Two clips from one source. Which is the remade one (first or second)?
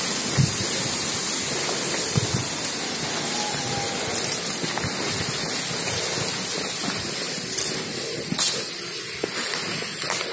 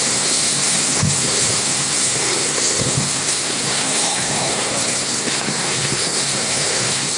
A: second